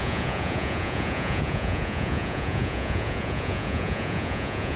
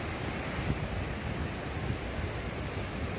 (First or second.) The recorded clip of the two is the second